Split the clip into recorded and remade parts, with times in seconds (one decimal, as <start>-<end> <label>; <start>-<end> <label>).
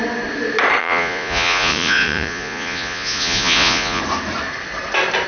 0.0-0.8 recorded; 0.8-4.0 remade; 4.0-5.3 recorded